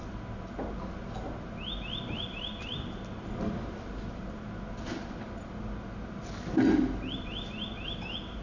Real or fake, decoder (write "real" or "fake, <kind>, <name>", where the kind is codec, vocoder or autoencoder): real